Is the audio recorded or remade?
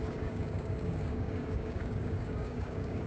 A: remade